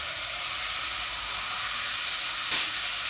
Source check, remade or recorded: recorded